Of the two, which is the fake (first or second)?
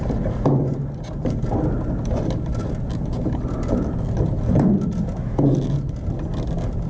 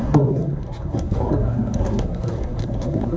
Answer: second